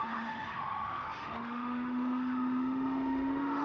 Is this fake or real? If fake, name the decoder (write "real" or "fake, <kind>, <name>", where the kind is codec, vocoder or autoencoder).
fake, autoencoder, DAC-VAE